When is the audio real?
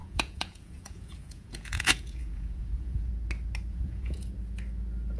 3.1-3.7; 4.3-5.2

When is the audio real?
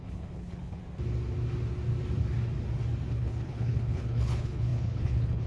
0.8-3.1